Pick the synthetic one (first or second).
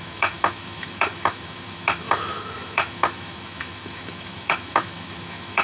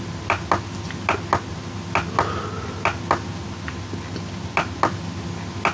first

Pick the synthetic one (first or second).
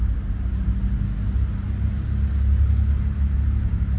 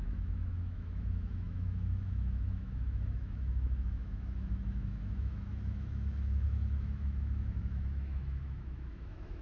second